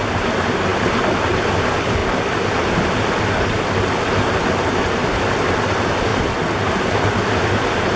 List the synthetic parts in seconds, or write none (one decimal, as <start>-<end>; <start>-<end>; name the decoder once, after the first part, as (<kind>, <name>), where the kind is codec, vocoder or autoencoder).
5.0-5.6 (vocoder, BigVGAN v2)